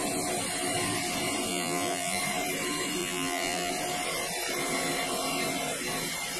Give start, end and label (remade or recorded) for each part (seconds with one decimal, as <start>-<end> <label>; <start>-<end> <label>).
0.0-1.5 recorded; 1.5-2.2 remade; 2.2-3.0 recorded; 3.0-3.7 remade; 3.7-6.4 recorded